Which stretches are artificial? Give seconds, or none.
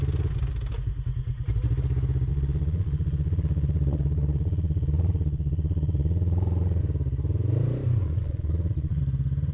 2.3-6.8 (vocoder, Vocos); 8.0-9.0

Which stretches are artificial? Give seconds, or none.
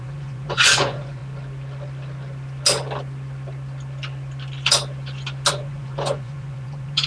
0.0-1.2 (vocoder, Vocos); 5.5-7.1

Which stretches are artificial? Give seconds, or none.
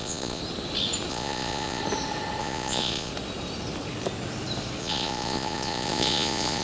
0.0-0.4 (vocoder, Vocos); 1.1-1.8; 2.4-3.1; 4.8-6.6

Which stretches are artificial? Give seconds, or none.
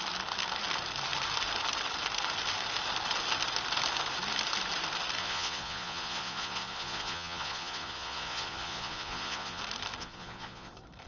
5.2-9.6 (vocoder, Vocos); 10.0-10.7